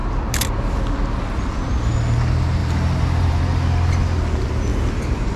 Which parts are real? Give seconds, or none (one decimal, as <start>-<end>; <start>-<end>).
0.0-2.6; 3.4-4.7